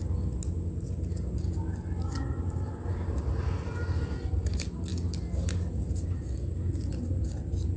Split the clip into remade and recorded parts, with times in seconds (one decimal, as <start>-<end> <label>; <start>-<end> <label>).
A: 0.0-7.8 recorded